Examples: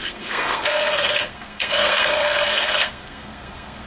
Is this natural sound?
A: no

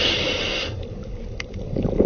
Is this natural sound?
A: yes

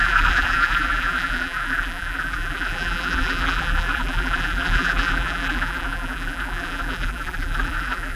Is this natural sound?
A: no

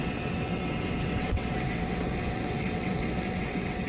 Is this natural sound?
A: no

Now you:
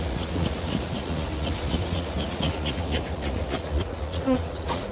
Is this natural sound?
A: no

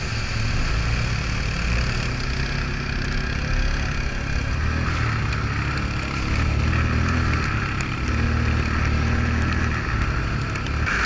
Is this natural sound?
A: yes